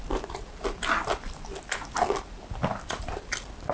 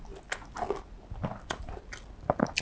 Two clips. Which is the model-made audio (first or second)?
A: first